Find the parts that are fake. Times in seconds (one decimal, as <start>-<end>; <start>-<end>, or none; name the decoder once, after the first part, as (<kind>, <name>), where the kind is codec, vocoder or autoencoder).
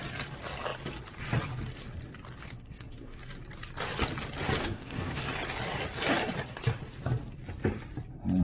2.4-3.2 (codec, SNAC); 4.6-5.2